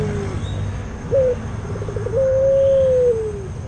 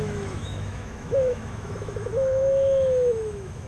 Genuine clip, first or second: first